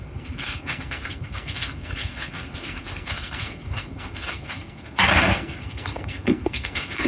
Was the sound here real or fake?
fake